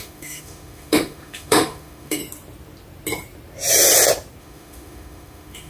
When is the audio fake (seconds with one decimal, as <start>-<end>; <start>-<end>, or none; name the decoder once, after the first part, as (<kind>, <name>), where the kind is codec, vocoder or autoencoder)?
0.0-2.2 (autoencoder, DAC-VAE); 4.4-5.7